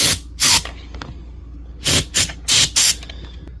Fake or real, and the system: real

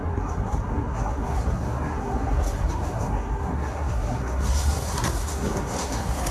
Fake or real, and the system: fake, codec, SNAC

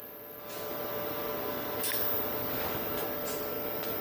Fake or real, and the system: real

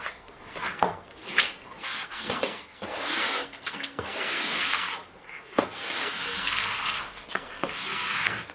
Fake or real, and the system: fake, codec, SNAC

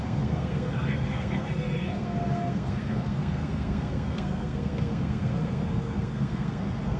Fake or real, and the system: fake, codec, SNAC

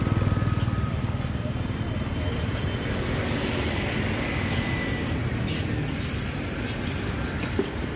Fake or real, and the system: real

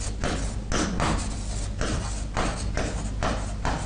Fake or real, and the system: real